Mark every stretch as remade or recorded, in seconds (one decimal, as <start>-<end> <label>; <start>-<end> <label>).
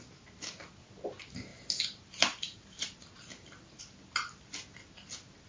0.0-1.5 recorded; 1.5-3.8 remade; 3.8-5.5 recorded